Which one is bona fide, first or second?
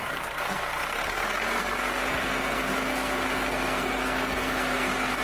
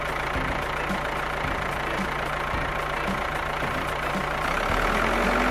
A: second